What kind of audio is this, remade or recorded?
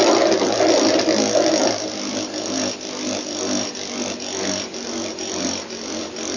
recorded